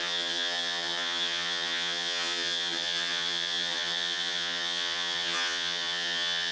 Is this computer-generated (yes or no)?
yes